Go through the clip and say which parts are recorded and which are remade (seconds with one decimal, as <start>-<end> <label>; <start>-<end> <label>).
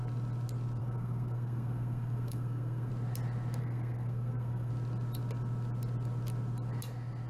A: 0.0-0.8 recorded; 0.8-2.9 remade; 2.9-3.6 recorded; 3.6-4.7 remade; 4.7-7.3 recorded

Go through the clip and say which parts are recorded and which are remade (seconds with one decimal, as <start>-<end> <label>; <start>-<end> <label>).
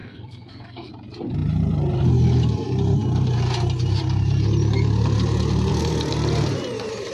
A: 0.0-0.9 remade; 0.9-7.1 recorded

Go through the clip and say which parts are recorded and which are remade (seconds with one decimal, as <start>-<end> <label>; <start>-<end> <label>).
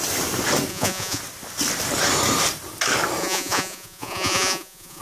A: 0.0-0.7 recorded; 0.7-1.2 remade; 1.2-3.2 recorded; 3.2-5.0 remade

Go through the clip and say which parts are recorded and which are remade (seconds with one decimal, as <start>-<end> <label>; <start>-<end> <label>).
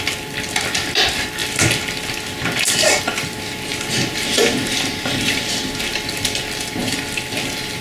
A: 0.0-7.8 recorded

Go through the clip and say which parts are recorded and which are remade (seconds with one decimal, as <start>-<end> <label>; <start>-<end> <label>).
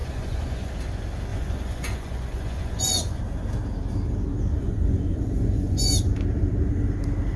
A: 0.0-0.7 remade; 0.7-1.3 recorded; 1.3-3.2 remade; 3.2-4.6 recorded; 4.6-5.9 remade; 5.9-7.4 recorded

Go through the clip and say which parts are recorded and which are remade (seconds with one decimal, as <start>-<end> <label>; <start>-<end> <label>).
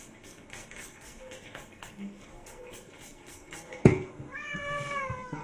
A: 0.0-5.4 remade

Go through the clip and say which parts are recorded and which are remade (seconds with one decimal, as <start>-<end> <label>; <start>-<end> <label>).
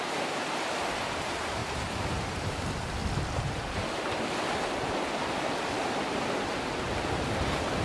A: 0.0-3.0 remade; 3.0-7.8 recorded